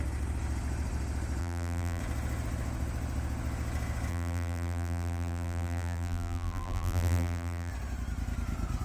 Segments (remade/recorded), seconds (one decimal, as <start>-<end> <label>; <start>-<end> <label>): 0.0-1.4 recorded; 1.4-2.0 remade; 2.0-4.1 recorded; 4.1-7.7 remade; 7.7-8.8 recorded